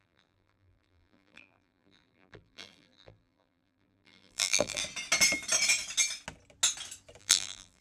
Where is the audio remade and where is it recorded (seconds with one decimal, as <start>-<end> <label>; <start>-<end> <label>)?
0.0-4.8 remade; 4.8-7.2 recorded; 7.2-7.8 remade